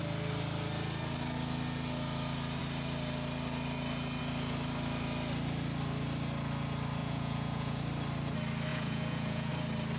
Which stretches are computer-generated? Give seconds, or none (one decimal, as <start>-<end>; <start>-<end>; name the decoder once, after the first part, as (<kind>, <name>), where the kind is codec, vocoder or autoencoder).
7.0-7.8 (vocoder, Vocos); 8.7-9.5